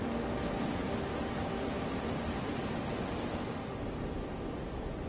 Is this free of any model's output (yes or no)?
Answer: yes